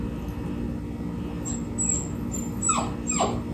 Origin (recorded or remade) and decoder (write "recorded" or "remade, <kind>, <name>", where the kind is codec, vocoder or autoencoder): recorded